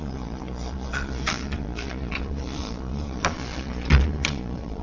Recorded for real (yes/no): no